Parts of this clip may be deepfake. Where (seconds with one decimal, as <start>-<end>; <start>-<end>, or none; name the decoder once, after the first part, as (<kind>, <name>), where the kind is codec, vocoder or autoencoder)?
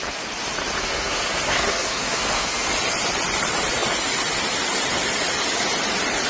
0.8-2.7 (codec, SNAC)